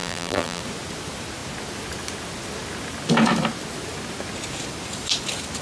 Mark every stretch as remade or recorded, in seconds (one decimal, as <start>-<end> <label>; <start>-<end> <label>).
0.0-0.6 remade; 0.6-5.6 recorded